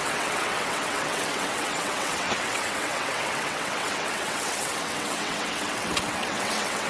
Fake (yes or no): yes